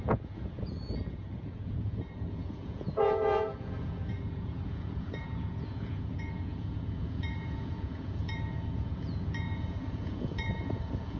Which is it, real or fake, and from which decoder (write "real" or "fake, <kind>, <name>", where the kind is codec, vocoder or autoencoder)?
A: fake, vocoder, Vocos